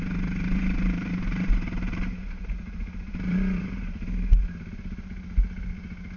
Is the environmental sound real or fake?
real